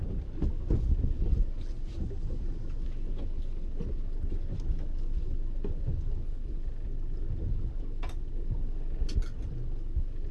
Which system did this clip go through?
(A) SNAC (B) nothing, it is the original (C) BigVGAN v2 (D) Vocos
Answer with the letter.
B